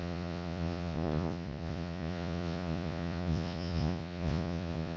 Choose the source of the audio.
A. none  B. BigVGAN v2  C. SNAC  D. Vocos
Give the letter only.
D